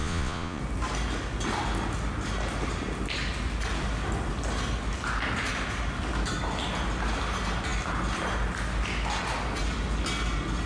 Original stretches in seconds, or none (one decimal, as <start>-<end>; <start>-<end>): 0.6-10.7